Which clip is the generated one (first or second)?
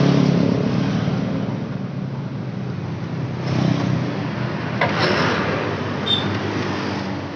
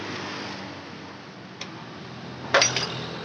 second